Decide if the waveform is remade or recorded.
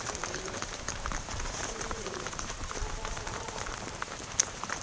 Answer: remade